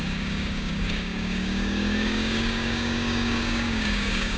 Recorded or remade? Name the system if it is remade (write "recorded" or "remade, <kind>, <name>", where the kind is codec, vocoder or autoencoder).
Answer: remade, codec, DAC